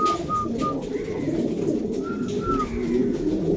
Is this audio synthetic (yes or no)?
no